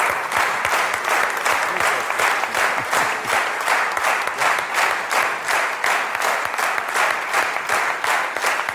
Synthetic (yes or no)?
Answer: no